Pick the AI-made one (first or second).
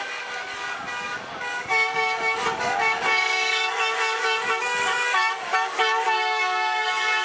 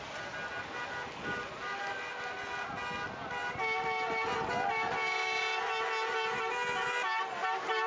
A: first